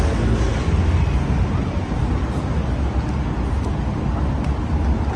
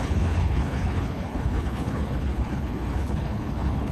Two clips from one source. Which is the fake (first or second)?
second